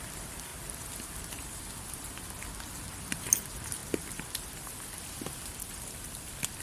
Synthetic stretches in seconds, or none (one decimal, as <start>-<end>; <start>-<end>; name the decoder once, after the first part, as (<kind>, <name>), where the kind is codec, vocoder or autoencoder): none